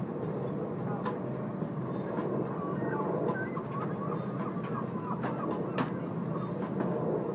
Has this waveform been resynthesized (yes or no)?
no